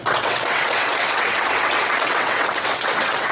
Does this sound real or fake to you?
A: fake